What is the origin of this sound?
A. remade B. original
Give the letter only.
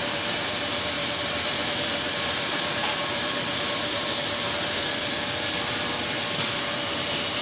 A